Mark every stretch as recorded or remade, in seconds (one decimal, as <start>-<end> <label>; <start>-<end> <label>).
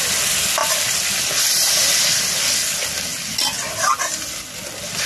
0.0-5.1 recorded